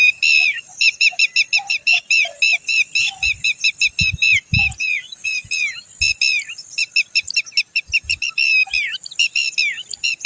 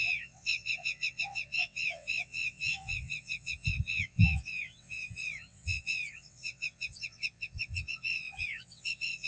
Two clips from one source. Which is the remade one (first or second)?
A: second